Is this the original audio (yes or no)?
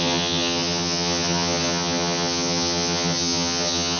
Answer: no